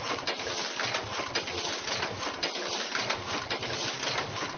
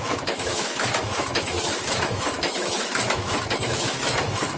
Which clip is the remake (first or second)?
second